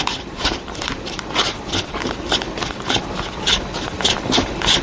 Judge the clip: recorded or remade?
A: remade